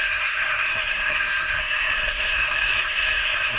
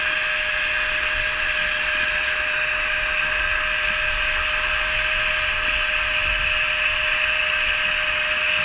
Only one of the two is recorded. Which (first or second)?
second